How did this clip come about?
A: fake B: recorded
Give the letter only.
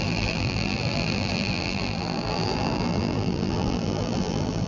A